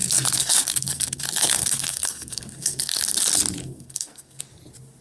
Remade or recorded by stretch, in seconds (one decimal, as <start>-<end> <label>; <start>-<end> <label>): 0.0-3.0 remade; 3.0-3.6 recorded; 3.6-4.4 remade; 4.4-5.0 recorded